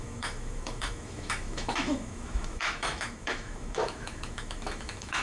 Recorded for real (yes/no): no